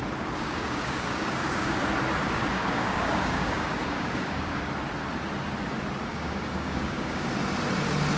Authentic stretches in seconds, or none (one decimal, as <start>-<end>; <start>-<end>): 1.8-2.2; 4.7-6.1; 7.3-8.2